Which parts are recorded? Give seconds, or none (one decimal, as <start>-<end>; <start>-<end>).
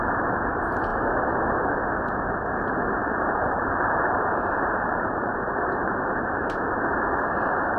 0.0-3.0; 5.3-7.8